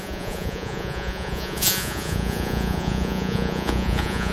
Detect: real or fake fake